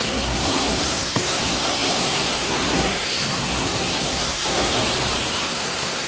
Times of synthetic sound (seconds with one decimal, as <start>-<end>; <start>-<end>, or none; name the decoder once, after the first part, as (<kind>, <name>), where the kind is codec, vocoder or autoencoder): 0.0-4.8 (codec, SNAC); 5.3-6.1